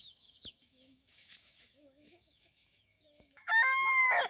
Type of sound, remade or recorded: remade